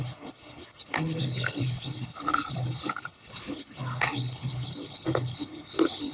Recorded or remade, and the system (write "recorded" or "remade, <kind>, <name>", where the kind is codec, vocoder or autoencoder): remade, codec, HILCodec